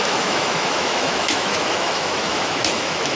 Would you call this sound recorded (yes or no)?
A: no